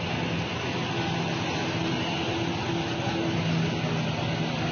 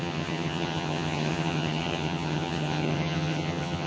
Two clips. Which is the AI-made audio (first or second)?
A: second